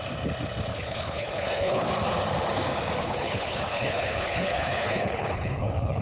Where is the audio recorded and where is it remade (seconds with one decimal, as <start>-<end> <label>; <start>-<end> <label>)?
0.0-0.7 recorded; 0.7-1.9 remade; 1.9-3.0 recorded; 3.0-6.0 remade